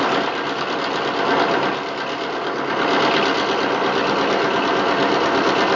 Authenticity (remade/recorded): recorded